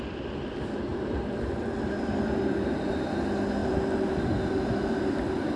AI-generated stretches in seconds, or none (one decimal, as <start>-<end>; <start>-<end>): 0.9-2.9; 3.6-4.1